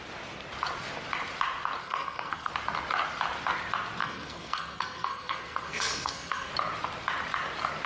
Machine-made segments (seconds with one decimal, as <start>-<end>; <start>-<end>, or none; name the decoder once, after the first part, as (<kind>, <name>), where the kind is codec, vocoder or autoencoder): 1.8-2.5 (codec, SNAC); 4.0-6.5